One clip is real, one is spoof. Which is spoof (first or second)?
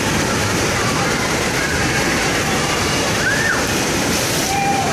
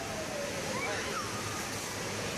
first